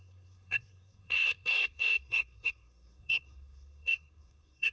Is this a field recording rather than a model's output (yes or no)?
no